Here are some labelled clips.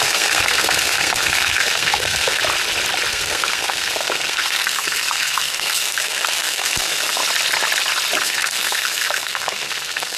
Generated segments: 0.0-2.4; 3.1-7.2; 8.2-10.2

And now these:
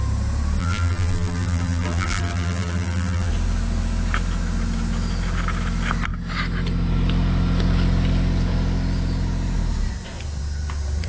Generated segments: 0.6-3.3

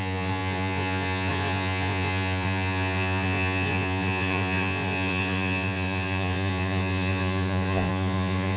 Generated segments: 0.0-8.6

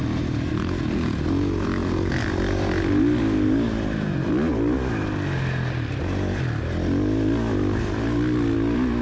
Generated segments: none

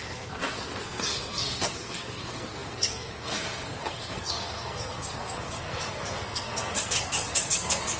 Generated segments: 0.0-8.0